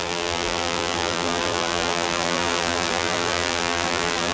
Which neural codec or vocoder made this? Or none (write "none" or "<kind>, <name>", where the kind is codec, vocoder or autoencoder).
vocoder, BigVGAN v2